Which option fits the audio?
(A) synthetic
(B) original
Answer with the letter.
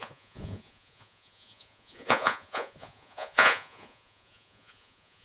A